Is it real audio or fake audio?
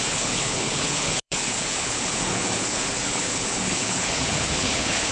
fake